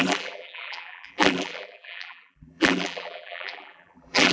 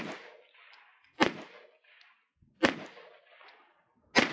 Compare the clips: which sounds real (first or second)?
second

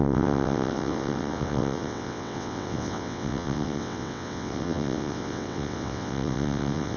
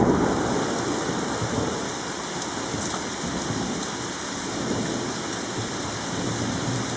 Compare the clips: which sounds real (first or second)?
second